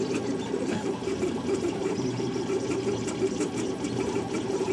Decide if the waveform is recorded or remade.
remade